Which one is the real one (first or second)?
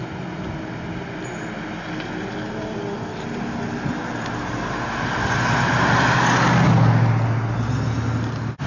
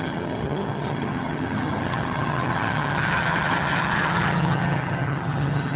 first